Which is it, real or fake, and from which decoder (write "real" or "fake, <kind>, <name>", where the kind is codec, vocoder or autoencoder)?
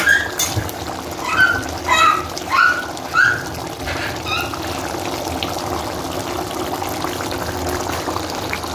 real